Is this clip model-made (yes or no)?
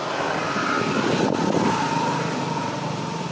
no